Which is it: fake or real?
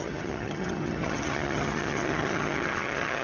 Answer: fake